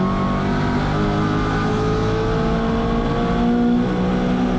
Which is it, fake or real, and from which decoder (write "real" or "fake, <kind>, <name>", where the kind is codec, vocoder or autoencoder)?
real